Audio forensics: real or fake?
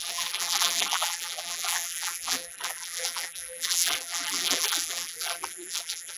fake